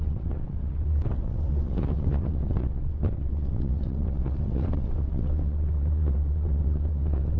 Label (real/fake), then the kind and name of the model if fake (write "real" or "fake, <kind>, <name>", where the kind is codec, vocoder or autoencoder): fake, vocoder, WaveNeXt